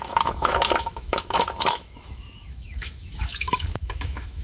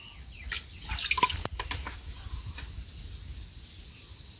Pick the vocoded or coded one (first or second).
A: first